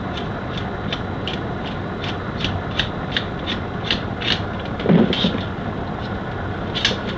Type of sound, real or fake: real